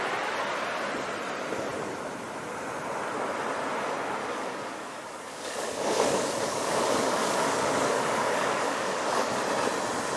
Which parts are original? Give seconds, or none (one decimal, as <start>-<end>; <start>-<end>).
0.0-4.2; 9.4-10.2